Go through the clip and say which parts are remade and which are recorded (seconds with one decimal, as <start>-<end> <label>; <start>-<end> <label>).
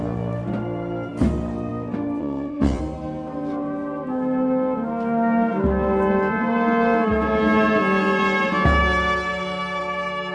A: 0.0-2.2 recorded; 2.2-2.8 remade; 2.8-10.3 recorded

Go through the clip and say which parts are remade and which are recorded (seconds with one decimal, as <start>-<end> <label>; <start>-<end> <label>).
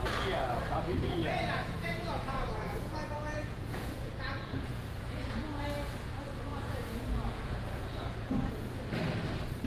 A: 0.0-1.2 recorded; 1.2-5.6 remade; 5.6-6.5 recorded; 6.5-8.5 remade; 8.5-9.7 recorded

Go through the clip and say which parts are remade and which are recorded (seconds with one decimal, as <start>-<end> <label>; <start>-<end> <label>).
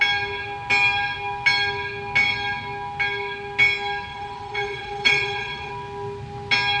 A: 0.0-4.1 recorded; 4.1-5.7 remade; 5.7-6.8 recorded